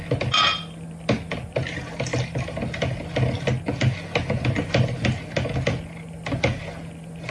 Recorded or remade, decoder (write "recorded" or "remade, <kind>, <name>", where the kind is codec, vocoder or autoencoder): recorded